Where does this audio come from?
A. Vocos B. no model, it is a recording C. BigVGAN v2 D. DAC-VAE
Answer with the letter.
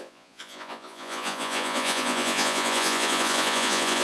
A